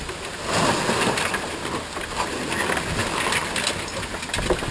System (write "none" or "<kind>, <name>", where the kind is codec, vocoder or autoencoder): none